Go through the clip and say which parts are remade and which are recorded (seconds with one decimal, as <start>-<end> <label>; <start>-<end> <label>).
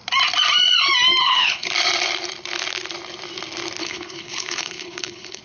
0.0-1.2 recorded; 1.2-1.7 remade; 1.7-3.8 recorded; 3.8-5.4 remade